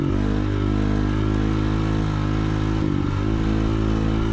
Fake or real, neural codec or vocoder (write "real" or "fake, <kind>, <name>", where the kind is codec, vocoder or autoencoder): real